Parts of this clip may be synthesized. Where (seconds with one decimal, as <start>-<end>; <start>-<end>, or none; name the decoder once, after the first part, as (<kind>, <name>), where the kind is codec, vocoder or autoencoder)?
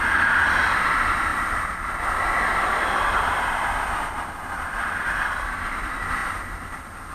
none